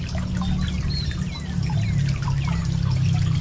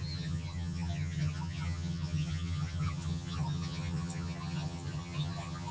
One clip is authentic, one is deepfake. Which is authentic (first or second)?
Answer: first